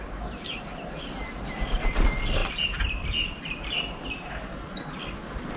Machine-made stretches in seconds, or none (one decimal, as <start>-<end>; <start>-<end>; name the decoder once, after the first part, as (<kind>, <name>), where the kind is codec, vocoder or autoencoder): none